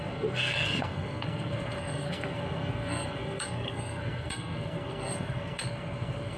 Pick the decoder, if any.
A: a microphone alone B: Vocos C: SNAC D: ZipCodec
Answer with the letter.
C